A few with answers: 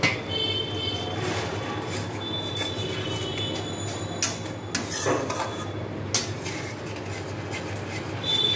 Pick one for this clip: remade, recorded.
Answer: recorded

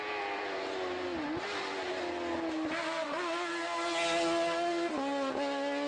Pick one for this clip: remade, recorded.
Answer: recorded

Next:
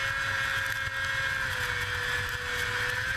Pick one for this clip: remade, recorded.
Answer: recorded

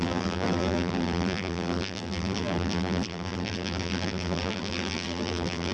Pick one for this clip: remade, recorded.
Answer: remade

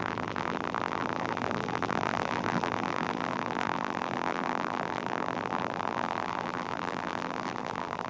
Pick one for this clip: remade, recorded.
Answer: remade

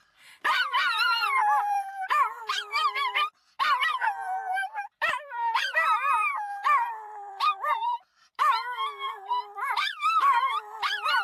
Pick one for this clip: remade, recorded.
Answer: remade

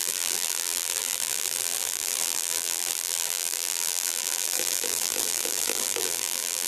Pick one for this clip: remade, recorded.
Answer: remade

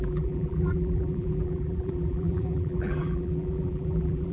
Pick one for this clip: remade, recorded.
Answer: remade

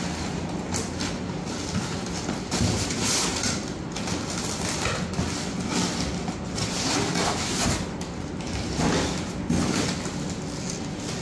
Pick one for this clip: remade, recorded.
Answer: recorded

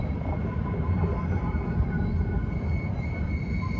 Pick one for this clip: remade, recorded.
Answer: recorded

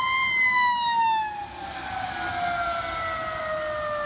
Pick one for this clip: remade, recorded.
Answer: recorded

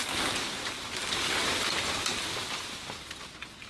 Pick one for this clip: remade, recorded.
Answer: recorded